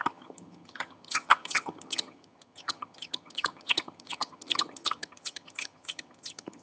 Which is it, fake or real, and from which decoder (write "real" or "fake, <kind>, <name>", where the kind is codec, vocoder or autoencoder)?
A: fake, vocoder, HiFi-GAN